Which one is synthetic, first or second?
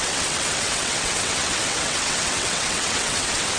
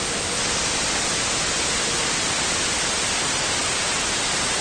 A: first